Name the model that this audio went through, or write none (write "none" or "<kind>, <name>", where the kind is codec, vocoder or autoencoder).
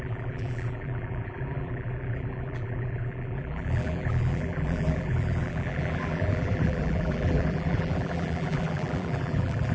vocoder, BigVGAN v2